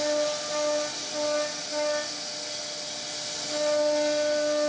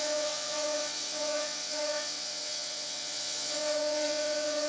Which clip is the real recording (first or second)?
first